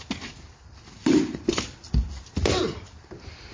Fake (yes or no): no